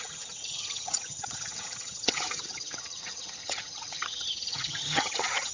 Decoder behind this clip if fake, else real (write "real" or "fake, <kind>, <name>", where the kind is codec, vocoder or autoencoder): fake, vocoder, HiFi-GAN